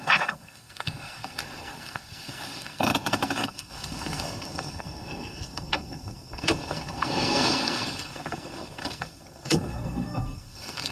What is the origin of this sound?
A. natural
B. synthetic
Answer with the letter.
B